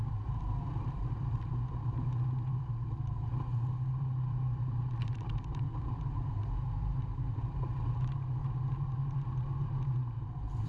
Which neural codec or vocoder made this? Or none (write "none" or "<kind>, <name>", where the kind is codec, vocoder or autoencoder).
vocoder, BigVGAN v2